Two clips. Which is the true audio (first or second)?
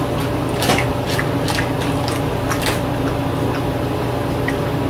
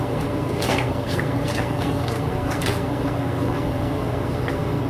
first